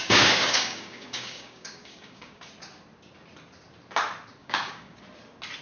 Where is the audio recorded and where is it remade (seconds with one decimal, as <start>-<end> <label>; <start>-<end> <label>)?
0.0-2.4 remade; 2.4-4.4 recorded; 4.4-5.0 remade; 5.0-5.6 recorded